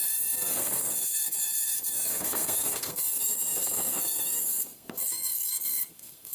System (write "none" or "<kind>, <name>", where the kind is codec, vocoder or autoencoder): codec, SNAC